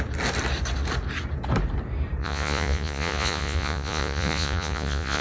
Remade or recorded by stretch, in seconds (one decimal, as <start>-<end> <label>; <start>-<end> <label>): 0.0-2.2 recorded; 2.2-5.2 remade